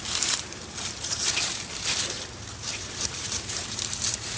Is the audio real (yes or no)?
no